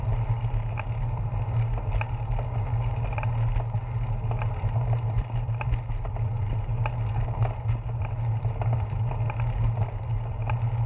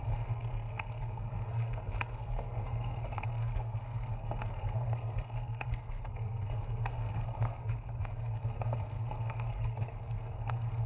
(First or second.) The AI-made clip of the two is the second